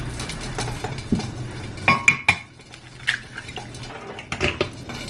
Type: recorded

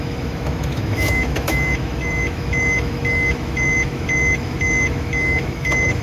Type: remade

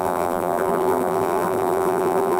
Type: remade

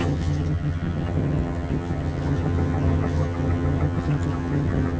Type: remade